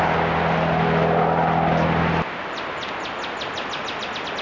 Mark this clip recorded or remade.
recorded